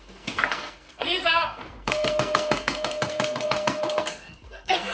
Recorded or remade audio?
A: remade